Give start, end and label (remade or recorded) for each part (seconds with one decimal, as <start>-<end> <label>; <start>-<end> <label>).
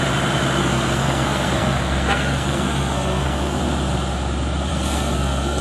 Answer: 0.0-0.6 recorded; 0.6-3.6 remade; 3.6-4.7 recorded; 4.7-5.6 remade